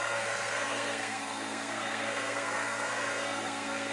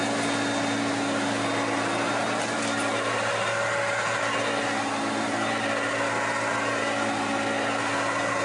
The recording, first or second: second